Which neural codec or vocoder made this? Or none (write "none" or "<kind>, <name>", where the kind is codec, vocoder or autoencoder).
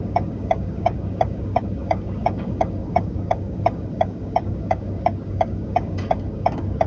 codec, DAC